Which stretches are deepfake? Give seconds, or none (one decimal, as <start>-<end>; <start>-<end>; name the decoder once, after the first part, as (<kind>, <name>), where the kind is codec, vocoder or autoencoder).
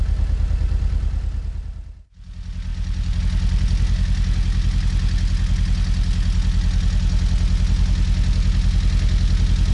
2.7-3.2 (vocoder, BigVGAN v2)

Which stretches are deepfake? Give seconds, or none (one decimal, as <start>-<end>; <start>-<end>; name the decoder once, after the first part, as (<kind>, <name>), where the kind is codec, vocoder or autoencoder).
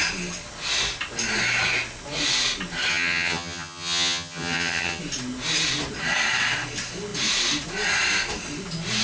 2.9-5.0 (vocoder, HiFi-GAN)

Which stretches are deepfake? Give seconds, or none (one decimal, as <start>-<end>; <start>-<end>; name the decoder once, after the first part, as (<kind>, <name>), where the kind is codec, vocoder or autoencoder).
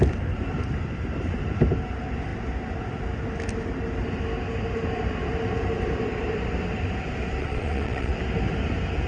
7.4-8.1 (vocoder, WaveNeXt)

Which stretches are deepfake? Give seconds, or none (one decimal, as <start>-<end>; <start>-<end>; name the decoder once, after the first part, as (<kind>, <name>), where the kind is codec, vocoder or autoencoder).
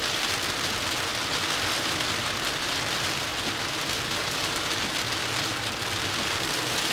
none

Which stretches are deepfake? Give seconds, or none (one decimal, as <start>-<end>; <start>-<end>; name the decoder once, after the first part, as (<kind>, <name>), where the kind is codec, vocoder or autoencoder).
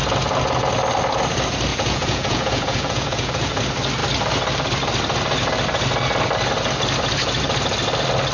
1.7-3.6 (vocoder, Vocos)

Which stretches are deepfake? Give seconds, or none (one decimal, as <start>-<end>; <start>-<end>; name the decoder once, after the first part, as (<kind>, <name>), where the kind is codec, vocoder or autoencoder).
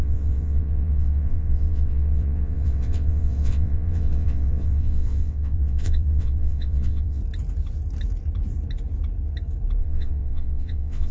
0.0-7.2 (vocoder, WaveNeXt); 9.8-11.1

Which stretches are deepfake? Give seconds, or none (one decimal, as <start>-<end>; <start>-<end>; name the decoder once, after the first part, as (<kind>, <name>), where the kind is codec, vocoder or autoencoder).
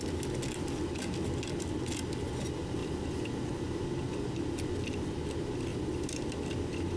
none